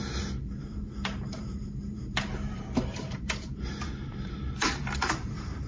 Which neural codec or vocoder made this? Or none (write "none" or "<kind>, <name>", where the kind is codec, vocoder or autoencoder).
vocoder, BigVGAN v2